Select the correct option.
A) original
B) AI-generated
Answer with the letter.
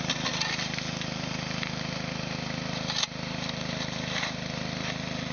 A